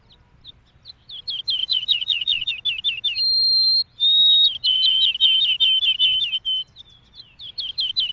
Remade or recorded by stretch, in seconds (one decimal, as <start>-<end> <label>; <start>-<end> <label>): 0.0-1.6 recorded; 1.6-2.5 remade; 2.5-8.1 recorded